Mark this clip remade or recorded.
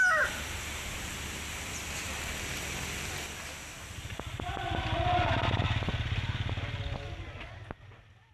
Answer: recorded